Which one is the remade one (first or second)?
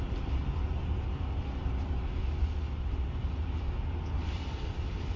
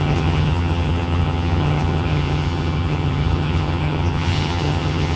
second